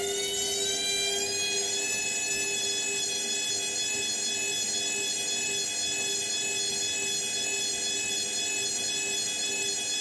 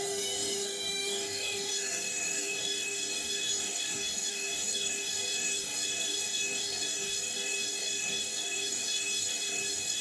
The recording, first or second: first